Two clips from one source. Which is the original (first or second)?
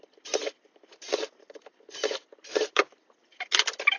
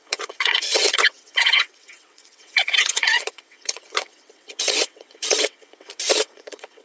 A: first